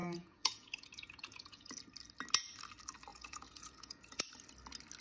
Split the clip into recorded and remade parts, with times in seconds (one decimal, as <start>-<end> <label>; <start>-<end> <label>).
0.0-1.7 remade; 1.7-3.1 recorded; 3.1-4.2 remade; 4.2-5.0 recorded